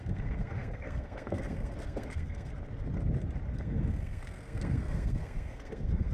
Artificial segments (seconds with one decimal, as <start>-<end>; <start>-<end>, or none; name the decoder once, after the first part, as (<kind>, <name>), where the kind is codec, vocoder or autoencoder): 0.0-2.5 (codec, SNAC); 3.5-6.1